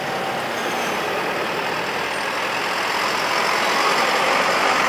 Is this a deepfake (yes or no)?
no